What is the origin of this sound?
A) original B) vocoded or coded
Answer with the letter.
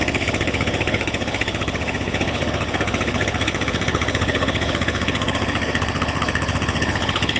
B